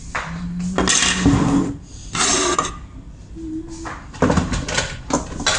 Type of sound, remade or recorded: recorded